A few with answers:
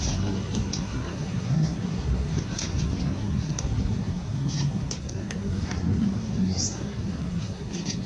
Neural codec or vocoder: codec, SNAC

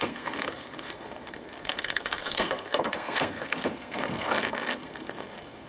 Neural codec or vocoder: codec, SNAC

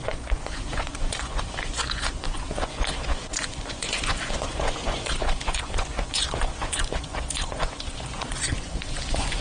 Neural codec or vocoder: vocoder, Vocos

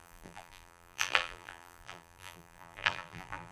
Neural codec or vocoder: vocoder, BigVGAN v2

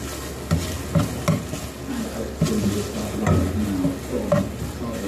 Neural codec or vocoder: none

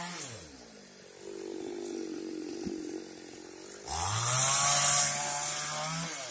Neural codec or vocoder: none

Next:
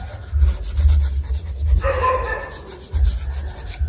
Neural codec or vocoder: none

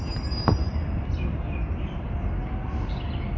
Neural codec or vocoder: none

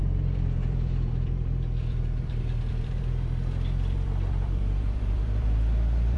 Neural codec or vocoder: vocoder, BigVGAN v2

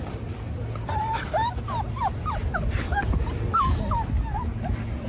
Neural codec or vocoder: none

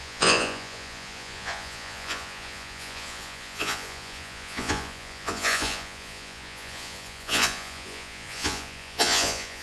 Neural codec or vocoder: vocoder, Vocos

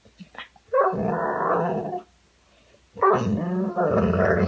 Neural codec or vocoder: none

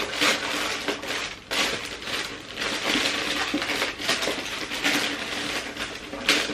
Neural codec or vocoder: none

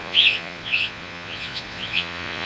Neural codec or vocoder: vocoder, Vocos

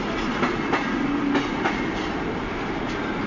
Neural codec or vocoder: none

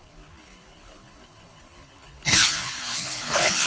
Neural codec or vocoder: codec, HILCodec